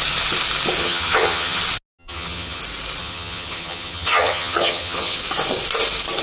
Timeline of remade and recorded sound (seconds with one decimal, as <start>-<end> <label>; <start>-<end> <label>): 0.0-0.8 recorded; 0.8-1.6 remade; 1.6-2.0 recorded; 2.0-2.6 remade; 2.6-3.0 recorded; 3.0-5.2 remade; 5.2-6.2 recorded